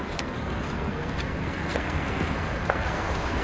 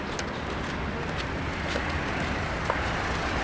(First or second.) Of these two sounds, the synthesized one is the first